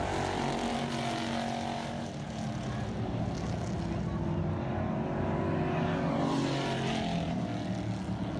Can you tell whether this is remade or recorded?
recorded